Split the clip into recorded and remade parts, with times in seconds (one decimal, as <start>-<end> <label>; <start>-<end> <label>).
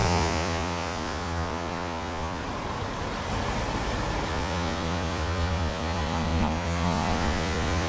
0.0-2.4 remade; 2.4-4.3 recorded; 4.3-7.9 remade